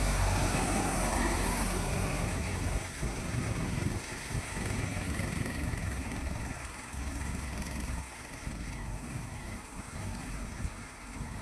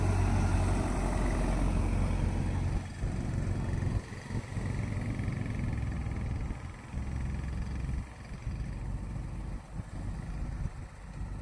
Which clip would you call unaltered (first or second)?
second